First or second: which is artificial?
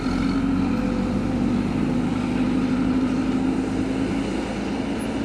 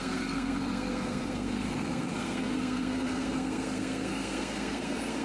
second